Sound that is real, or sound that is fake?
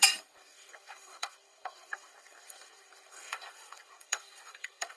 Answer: fake